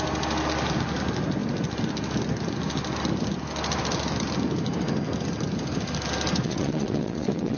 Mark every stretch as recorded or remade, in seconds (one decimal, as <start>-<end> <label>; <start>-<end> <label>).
0.0-6.4 recorded; 6.4-7.6 remade